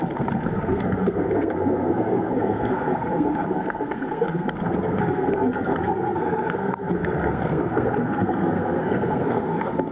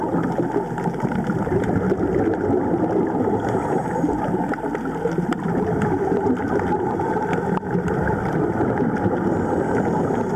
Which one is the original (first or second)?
second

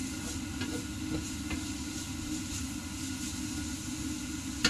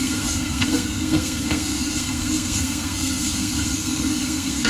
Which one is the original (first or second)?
first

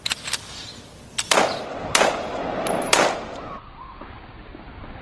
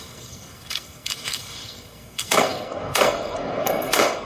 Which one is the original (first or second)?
first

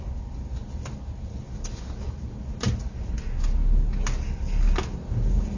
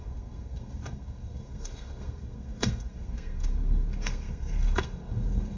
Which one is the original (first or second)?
first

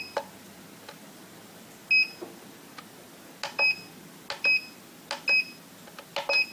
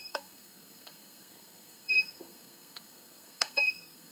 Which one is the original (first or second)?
first